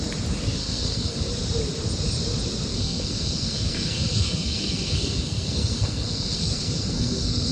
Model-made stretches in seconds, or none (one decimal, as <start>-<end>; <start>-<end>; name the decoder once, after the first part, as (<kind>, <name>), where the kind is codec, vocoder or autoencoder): 0.6-1.3 (codec, SNAC); 2.7-7.5